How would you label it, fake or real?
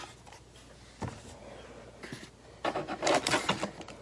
real